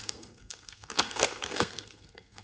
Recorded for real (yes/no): no